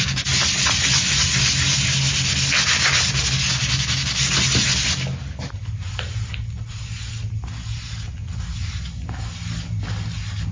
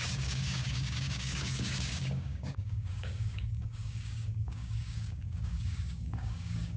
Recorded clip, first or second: first